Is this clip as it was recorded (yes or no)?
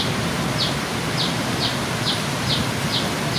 no